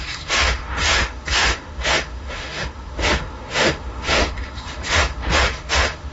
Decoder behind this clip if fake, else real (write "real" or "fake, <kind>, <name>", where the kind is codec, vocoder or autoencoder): fake, autoencoder, DAC-VAE